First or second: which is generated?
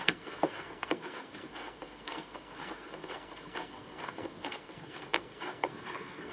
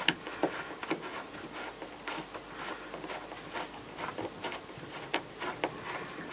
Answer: first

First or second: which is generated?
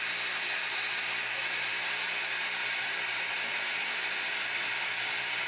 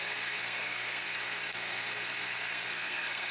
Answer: second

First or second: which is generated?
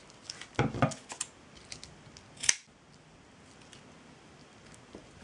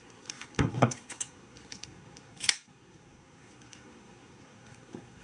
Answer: second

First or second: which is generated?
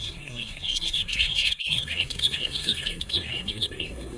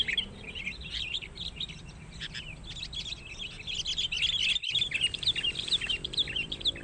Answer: first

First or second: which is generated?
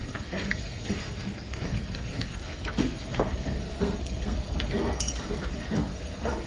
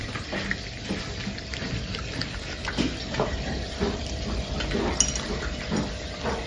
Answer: first